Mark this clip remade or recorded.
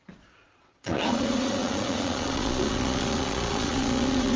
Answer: remade